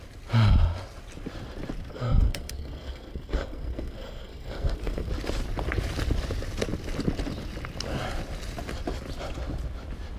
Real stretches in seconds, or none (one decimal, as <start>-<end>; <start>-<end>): 0.0-1.9; 5.1-10.2